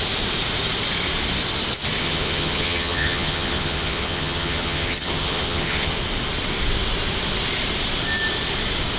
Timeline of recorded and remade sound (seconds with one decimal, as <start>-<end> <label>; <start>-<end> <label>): 0.0-2.0 recorded; 2.0-5.9 remade; 5.9-9.0 recorded